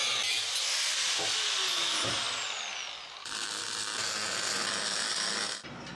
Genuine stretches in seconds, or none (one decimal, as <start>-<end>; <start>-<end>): 0.0-6.0